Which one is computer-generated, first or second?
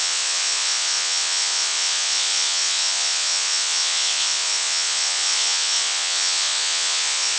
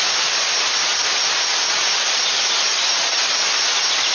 first